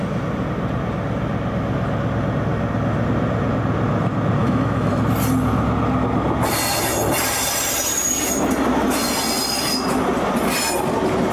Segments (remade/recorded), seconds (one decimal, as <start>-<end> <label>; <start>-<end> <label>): 0.0-4.4 recorded; 4.4-4.9 remade; 4.9-11.3 recorded